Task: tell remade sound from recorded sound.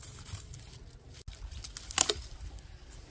recorded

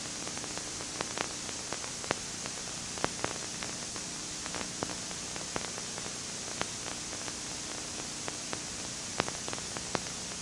recorded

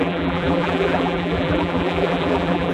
remade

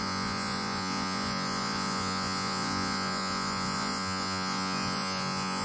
remade